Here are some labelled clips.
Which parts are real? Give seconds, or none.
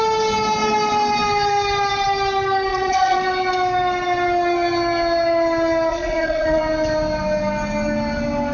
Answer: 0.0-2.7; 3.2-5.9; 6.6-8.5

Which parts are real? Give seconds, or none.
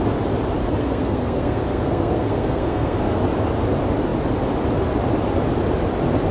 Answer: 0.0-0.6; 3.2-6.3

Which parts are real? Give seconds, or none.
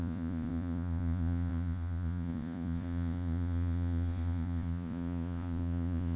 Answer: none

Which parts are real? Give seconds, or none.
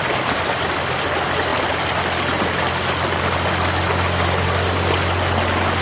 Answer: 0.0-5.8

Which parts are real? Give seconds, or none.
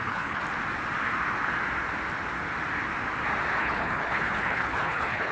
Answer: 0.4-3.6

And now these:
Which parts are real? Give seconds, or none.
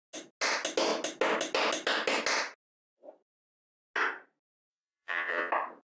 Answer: 0.0-4.7; 5.5-5.9